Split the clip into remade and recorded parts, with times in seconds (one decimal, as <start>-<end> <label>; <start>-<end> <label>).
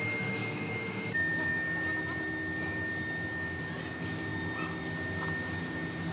0.0-0.4 recorded; 0.4-1.5 remade; 1.5-6.1 recorded